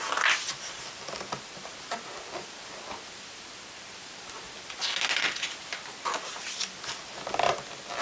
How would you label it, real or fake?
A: real